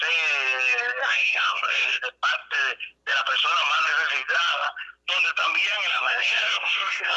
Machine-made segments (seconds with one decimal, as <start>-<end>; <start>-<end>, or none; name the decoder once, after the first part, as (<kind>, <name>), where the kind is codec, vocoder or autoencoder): 1.0-2.0 (codec, SNAC); 5.9-7.2